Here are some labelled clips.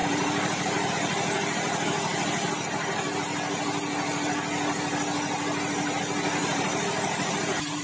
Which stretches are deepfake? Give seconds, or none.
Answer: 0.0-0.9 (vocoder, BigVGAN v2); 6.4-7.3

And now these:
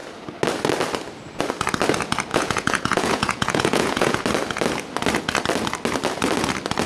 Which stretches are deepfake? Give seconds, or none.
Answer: 2.3-4.2 (vocoder, Vocos)

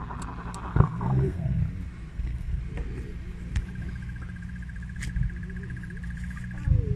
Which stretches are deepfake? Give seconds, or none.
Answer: 0.7-1.6 (codec, SNAC); 2.1-2.6

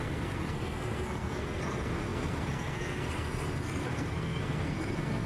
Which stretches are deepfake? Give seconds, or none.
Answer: 0.0-5.3 (codec, SNAC)